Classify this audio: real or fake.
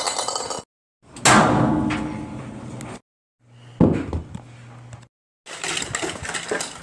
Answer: real